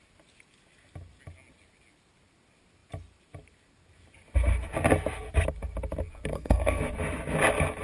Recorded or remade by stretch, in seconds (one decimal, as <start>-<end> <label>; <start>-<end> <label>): 0.0-6.3 recorded; 6.3-6.8 remade; 6.8-7.8 recorded